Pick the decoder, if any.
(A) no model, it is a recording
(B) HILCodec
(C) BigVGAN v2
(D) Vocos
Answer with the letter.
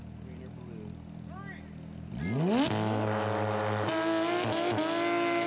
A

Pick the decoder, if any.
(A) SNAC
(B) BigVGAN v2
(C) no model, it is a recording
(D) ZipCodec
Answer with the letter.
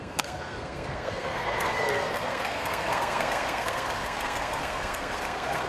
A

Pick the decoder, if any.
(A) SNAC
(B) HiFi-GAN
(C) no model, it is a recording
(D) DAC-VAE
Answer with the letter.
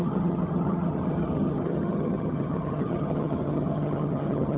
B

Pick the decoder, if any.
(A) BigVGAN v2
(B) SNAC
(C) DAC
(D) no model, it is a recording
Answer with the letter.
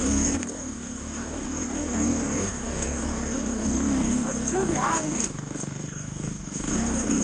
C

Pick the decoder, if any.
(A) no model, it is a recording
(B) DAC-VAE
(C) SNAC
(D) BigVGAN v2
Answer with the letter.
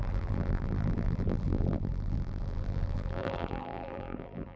D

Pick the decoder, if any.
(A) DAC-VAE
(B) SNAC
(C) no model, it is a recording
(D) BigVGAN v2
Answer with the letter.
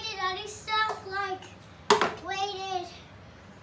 C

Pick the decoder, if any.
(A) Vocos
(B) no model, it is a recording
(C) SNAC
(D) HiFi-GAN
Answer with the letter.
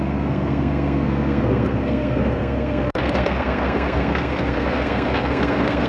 C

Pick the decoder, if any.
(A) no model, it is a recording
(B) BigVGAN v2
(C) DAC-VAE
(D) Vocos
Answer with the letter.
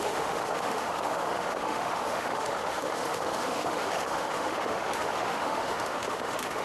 C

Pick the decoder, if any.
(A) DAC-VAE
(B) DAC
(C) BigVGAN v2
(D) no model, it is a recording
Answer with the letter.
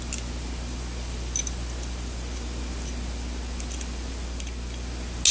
D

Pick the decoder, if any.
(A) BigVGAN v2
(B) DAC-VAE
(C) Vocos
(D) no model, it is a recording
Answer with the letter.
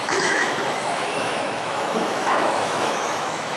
B